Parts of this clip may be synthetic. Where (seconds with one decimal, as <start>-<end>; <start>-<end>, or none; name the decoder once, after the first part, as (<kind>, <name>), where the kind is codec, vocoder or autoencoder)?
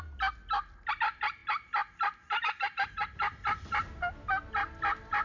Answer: none